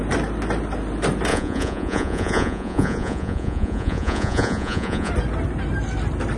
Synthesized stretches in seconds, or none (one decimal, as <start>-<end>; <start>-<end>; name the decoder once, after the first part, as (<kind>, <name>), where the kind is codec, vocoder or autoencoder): 1.3-5.1 (vocoder, Vocos)